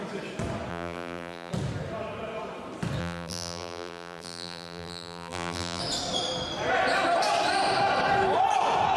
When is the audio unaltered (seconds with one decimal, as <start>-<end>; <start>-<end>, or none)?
0.0-0.7; 1.5-3.0; 5.8-9.0